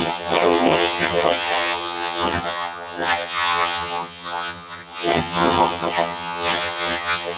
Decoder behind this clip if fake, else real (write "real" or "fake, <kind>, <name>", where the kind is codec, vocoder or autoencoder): fake, vocoder, HiFi-GAN